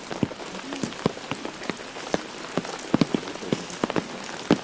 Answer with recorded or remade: recorded